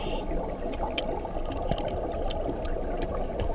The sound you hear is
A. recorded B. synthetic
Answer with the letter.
A